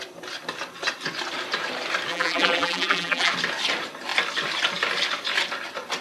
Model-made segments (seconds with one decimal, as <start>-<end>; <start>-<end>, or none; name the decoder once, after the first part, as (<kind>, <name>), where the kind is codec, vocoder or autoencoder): 2.1-3.3 (vocoder, BigVGAN v2)